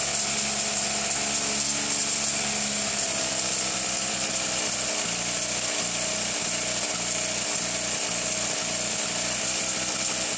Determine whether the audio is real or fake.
real